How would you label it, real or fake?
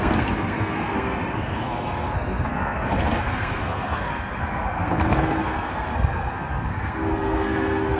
fake